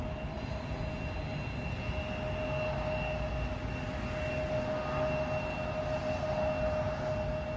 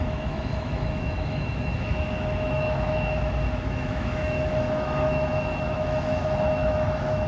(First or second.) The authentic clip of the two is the first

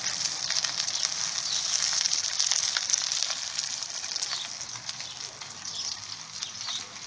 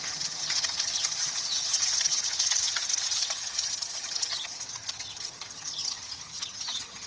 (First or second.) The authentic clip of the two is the first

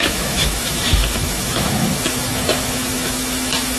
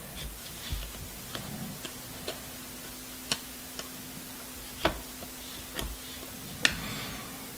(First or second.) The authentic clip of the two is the second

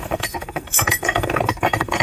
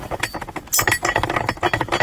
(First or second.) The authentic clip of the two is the second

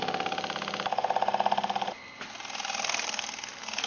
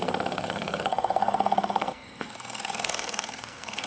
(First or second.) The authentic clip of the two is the first